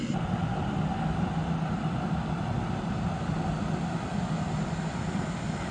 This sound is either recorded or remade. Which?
recorded